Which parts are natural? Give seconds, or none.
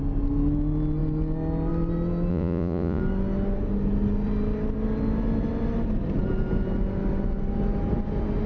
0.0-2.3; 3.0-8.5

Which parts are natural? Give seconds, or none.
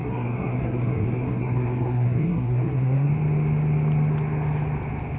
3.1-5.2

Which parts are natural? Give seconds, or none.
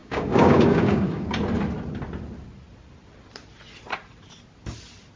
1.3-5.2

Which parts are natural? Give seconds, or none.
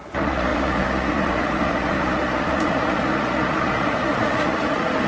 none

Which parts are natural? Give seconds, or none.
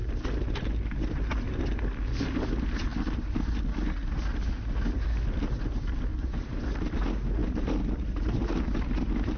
0.0-2.9; 3.6-6.1; 6.8-7.4; 8.6-9.4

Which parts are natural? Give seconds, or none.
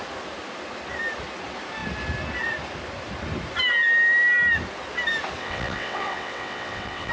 0.0-5.4